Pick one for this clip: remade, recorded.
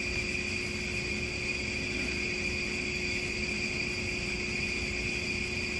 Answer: recorded